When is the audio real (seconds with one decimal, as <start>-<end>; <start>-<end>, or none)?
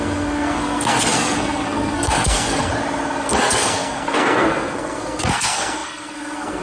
2.7-3.2